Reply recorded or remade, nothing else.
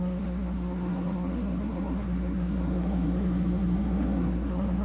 remade